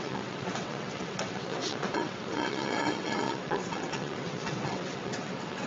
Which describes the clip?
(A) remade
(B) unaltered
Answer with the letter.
A